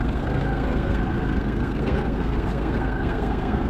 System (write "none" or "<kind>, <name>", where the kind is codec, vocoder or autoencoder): codec, SNAC